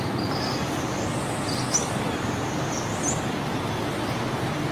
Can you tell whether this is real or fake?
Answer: real